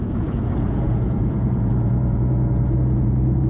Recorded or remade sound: remade